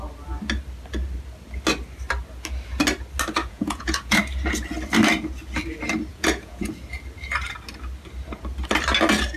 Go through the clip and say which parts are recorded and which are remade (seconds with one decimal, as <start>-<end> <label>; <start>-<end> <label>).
0.0-3.4 recorded; 3.4-4.2 remade; 4.2-6.1 recorded; 6.1-6.7 remade; 6.7-9.4 recorded